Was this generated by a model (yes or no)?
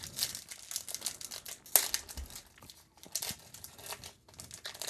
no